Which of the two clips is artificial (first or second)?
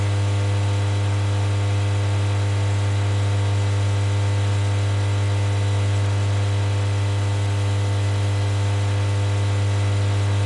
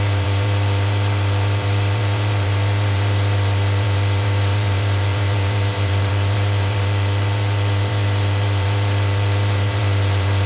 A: second